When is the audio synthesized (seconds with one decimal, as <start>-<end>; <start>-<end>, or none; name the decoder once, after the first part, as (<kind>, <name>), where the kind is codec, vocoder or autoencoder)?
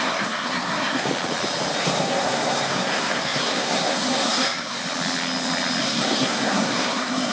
0.0-1.1 (codec, SNAC); 1.8-4.8; 5.8-7.3